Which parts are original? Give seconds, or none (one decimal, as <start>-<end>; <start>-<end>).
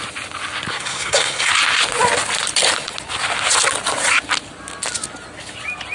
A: 0.0-0.7; 1.5-5.9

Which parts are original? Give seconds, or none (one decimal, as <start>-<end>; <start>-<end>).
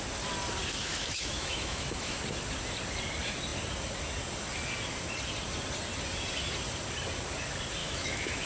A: 0.0-0.8; 2.2-7.8